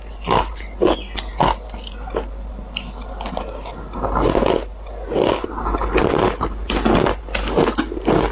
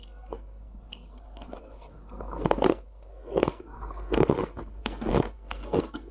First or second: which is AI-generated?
second